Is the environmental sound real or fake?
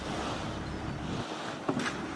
real